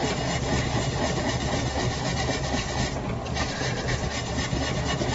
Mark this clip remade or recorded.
recorded